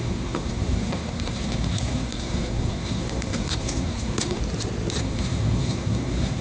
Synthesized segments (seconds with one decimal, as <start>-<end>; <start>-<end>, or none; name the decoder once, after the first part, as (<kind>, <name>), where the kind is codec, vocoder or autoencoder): 0.0-4.4 (codec, SNAC); 5.0-6.4

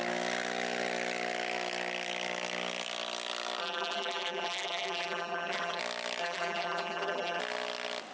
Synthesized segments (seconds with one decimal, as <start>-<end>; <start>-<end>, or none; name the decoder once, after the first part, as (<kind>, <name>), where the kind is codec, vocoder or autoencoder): 3.6-5.8 (vocoder, BigVGAN v2); 6.2-7.4

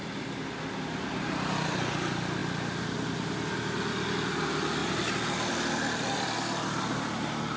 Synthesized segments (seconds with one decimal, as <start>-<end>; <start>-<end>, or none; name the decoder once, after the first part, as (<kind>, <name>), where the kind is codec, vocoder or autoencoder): none

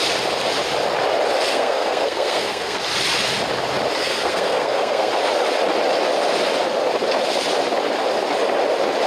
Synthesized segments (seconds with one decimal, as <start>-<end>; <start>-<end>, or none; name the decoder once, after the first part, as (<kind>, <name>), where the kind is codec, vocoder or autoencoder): 1.5-2.8 (codec, SNAC); 4.0-5.1

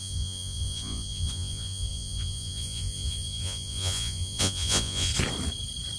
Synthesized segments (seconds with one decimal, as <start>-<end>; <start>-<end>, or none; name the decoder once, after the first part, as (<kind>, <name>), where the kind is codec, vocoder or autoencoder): 0.0-5.1 (vocoder, Vocos)